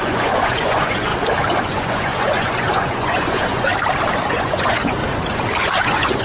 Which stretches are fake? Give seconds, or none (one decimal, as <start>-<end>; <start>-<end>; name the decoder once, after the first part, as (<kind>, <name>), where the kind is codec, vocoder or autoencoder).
0.0-1.1 (vocoder, Vocos); 1.6-3.7; 4.3-5.0; 5.6-6.2